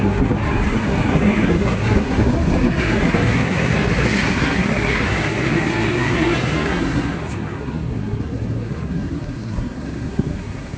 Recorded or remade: remade